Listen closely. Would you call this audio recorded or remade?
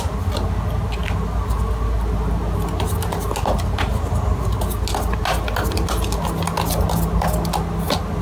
recorded